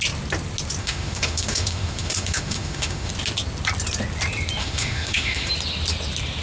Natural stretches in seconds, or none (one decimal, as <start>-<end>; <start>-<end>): 0.0-0.8; 3.1-4.6; 5.5-6.4